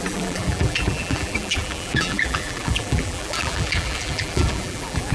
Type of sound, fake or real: fake